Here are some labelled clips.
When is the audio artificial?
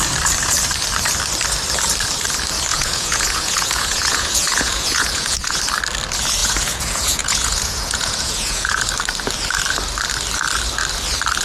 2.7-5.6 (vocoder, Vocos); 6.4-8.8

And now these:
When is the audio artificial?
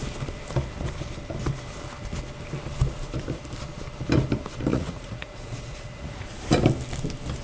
4.7-6.4 (vocoder, Vocos)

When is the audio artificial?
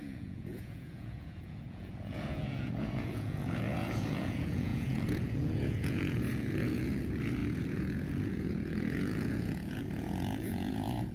0.0-11.1 (vocoder, Vocos)